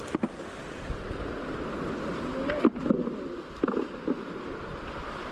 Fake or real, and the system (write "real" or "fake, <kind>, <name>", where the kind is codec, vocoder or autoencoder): real